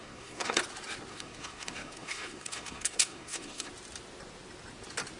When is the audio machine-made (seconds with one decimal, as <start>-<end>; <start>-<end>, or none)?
0.0-0.6; 1.1-3.7